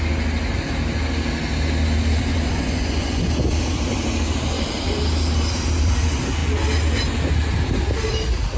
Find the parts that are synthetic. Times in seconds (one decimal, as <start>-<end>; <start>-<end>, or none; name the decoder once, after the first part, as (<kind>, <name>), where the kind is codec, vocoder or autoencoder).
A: 2.3-3.3 (vocoder, Vocos)